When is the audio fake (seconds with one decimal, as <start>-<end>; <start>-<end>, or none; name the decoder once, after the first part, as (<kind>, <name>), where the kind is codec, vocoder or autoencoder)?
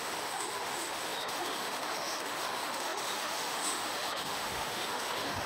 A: 0.0-5.5 (autoencoder, DAC-VAE)